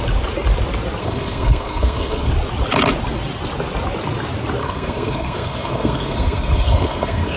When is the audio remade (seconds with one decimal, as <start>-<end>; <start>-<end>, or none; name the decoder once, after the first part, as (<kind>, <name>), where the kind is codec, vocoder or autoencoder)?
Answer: 1.0-2.3 (codec, SNAC); 4.6-7.4